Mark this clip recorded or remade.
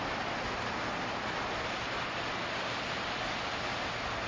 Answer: recorded